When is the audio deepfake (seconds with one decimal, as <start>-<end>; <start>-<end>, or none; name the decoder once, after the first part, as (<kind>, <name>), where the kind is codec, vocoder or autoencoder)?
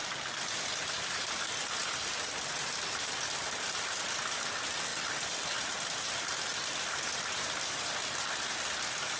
none